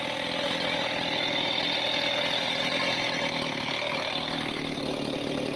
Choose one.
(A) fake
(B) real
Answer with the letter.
B